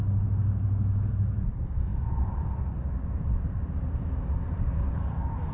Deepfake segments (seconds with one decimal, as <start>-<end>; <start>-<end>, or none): none